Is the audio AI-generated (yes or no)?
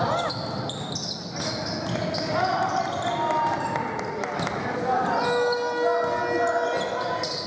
no